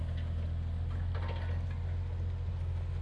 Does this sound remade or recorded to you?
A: recorded